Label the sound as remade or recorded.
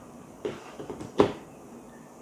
remade